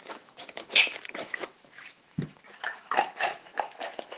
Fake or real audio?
fake